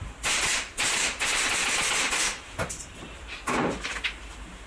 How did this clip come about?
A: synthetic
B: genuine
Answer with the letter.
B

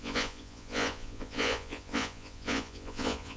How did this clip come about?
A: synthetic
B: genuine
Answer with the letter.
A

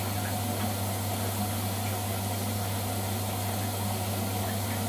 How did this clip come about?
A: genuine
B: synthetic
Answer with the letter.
A